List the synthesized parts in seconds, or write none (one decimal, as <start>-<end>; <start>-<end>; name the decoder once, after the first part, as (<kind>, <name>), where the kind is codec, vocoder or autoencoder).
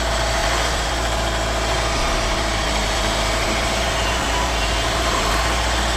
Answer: 0.4-0.9 (vocoder, BigVGAN v2); 2.0-5.4